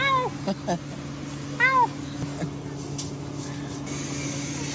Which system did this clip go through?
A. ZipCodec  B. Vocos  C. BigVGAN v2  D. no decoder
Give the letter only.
D